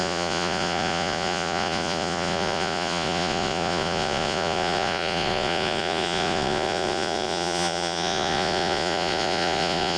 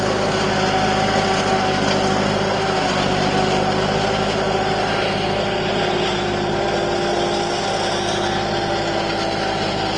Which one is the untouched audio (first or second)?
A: second